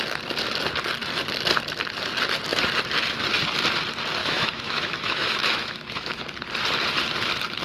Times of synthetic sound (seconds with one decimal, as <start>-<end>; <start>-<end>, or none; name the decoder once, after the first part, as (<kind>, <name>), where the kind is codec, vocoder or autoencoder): 4.2-6.2 (autoencoder, DAC-VAE)